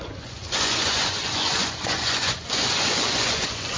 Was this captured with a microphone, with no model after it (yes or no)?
no